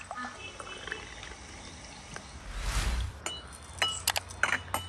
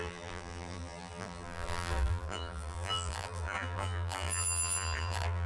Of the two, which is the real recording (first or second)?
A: first